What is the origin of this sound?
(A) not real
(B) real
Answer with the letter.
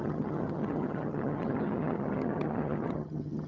A